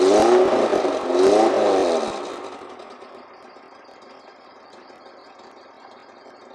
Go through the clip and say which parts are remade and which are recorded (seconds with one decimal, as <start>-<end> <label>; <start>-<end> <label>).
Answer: 0.0-6.5 recorded